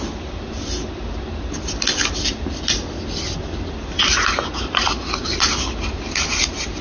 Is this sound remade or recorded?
recorded